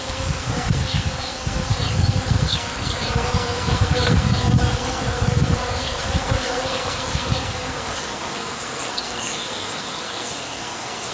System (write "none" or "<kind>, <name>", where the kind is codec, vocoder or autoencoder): codec, SNAC